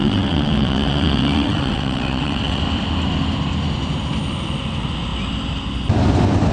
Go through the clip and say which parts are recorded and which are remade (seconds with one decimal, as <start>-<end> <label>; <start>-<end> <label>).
0.0-2.6 remade; 2.6-6.5 recorded